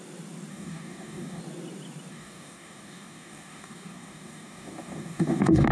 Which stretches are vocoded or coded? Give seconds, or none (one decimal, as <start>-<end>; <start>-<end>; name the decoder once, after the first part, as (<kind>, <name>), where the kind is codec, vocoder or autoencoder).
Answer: 0.5-1.4 (codec, DAC); 2.1-5.7